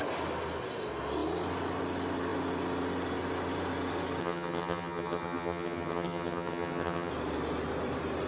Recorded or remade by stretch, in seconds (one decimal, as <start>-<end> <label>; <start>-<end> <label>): 0.0-4.2 recorded; 4.2-7.1 remade; 7.1-8.3 recorded